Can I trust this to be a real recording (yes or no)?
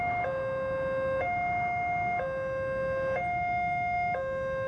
yes